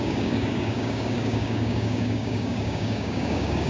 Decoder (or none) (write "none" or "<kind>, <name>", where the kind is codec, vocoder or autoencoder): codec, DAC